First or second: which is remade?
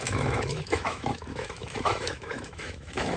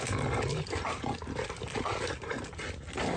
first